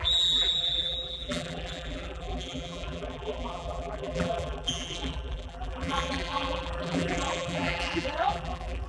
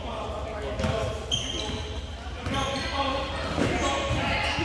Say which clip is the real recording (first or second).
second